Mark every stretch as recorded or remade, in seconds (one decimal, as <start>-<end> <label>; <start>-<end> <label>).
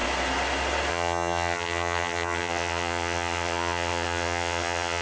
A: 0.0-0.9 recorded; 0.9-5.0 remade